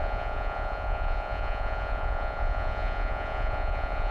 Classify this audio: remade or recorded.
remade